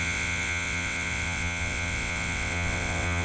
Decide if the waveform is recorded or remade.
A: remade